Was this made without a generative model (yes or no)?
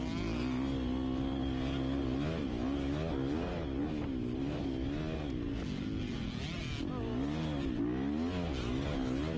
yes